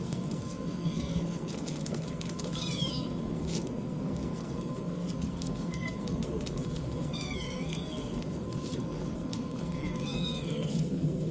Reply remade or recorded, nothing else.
remade